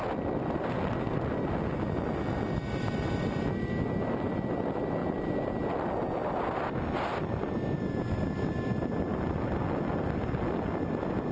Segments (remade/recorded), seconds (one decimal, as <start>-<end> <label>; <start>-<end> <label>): 0.0-5.0 recorded; 5.0-5.7 remade; 5.7-11.3 recorded